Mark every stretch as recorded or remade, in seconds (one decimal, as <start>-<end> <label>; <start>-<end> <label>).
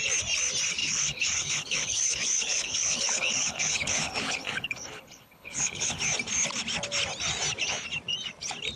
0.0-0.8 recorded; 0.8-6.0 remade; 6.0-8.8 recorded